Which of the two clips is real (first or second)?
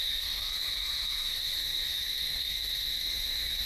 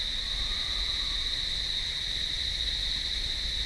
second